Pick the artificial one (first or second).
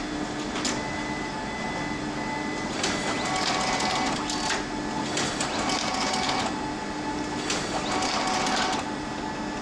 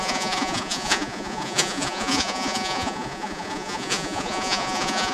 second